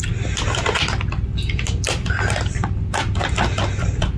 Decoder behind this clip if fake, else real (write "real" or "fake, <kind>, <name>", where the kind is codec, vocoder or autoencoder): real